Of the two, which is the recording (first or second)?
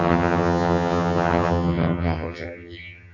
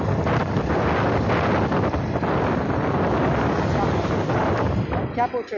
second